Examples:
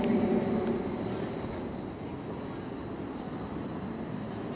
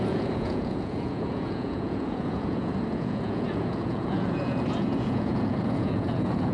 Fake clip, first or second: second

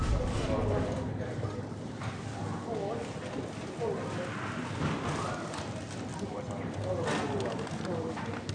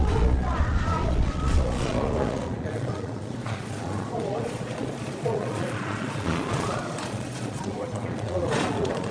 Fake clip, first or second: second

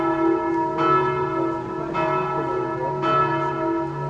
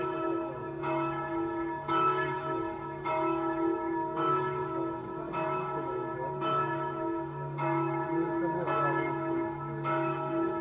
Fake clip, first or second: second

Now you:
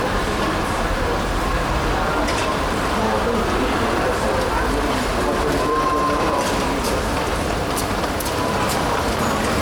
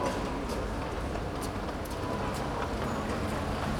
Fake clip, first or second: first